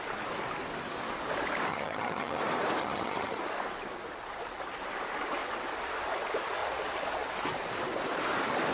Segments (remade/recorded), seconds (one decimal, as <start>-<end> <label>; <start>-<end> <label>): 0.0-1.7 recorded; 1.7-2.4 remade; 2.4-2.8 recorded; 2.8-3.4 remade; 3.4-8.7 recorded